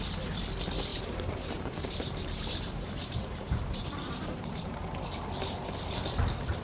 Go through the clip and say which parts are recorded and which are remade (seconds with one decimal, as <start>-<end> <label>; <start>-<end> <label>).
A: 0.0-0.9 recorded; 0.9-4.9 remade; 4.9-6.6 recorded